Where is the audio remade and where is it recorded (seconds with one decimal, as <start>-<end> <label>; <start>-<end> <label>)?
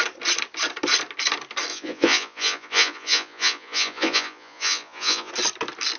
0.0-1.7 recorded; 1.7-5.3 remade; 5.3-6.0 recorded